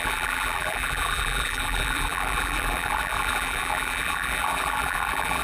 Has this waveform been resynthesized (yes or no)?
yes